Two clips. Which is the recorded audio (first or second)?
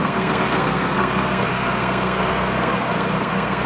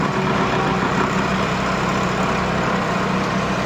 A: second